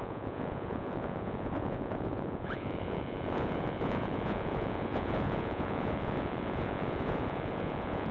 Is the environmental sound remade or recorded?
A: remade